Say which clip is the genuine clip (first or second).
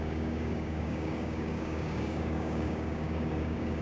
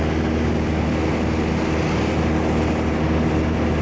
second